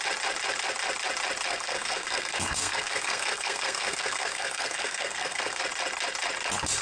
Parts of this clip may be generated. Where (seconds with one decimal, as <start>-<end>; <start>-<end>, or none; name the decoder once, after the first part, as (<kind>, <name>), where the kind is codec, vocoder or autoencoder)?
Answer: 1.5-5.6 (codec, SNAC)